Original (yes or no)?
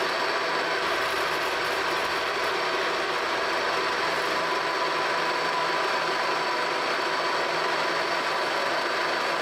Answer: yes